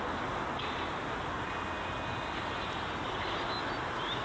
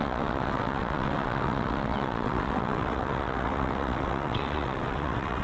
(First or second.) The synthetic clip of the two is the second